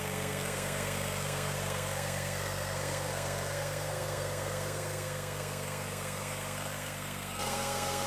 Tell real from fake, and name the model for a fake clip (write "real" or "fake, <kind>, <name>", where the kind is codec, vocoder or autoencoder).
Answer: fake, codec, SNAC